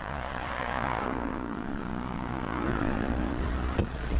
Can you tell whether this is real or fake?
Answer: fake